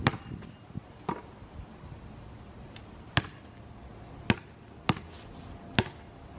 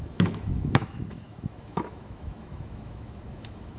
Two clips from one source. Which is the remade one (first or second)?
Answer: second